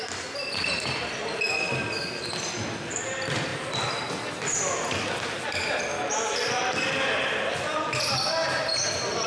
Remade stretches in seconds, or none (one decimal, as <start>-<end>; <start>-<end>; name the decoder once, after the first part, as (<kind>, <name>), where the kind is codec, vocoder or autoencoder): none